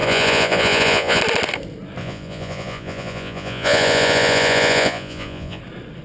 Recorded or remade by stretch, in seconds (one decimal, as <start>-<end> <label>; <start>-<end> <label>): 0.0-1.2 remade; 1.2-2.0 recorded; 2.0-5.6 remade; 5.6-6.0 recorded